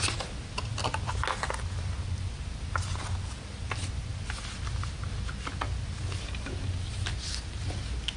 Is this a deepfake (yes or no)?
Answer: no